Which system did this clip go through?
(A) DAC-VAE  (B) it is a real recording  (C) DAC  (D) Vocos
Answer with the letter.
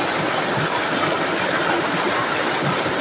B